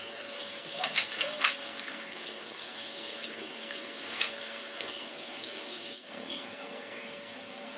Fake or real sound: fake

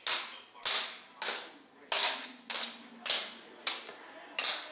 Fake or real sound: real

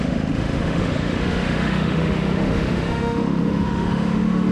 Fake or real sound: fake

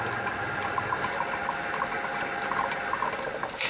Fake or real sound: fake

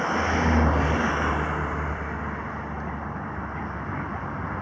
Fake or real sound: real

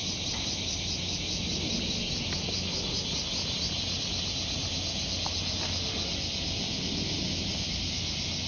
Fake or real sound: real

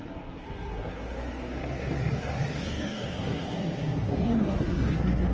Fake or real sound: fake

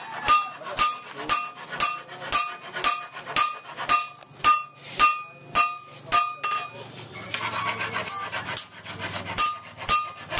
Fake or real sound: real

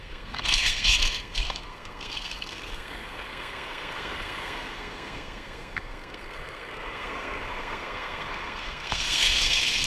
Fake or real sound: fake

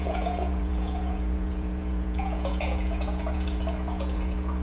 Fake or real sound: fake